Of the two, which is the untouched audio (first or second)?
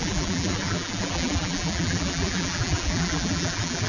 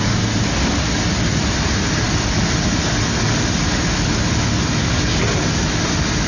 second